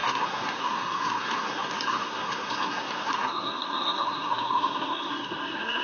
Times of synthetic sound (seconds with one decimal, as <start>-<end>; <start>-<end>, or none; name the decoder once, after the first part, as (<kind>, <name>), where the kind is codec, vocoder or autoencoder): 0.0-5.8 (codec, SNAC)